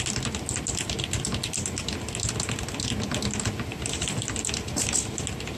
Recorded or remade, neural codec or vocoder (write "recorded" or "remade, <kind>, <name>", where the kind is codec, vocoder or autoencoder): recorded